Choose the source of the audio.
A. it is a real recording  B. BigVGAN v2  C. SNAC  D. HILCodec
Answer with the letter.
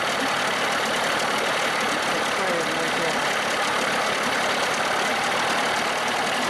A